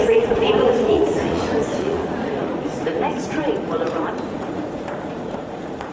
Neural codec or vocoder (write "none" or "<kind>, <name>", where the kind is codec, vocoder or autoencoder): vocoder, Vocos